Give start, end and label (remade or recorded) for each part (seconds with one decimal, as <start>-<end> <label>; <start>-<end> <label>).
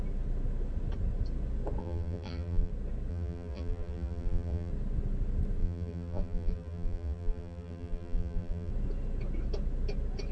0.0-1.8 recorded; 1.8-2.7 remade; 2.7-3.1 recorded; 3.1-4.7 remade; 4.7-5.6 recorded; 5.6-8.7 remade; 8.7-10.3 recorded